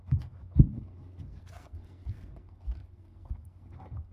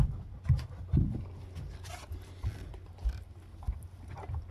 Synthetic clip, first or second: first